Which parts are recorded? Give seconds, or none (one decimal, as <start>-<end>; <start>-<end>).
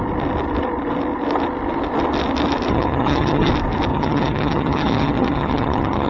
0.0-2.7; 3.5-3.9